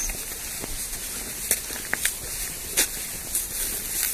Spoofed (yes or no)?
no